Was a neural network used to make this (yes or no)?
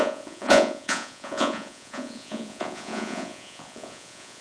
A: yes